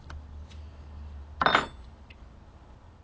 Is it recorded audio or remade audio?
recorded